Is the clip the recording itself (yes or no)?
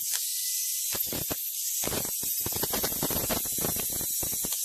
yes